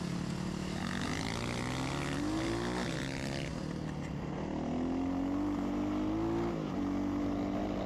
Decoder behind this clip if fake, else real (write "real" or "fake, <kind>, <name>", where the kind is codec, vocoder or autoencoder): real